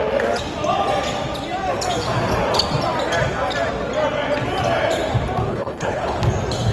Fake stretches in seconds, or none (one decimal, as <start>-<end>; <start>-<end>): 5.5-6.2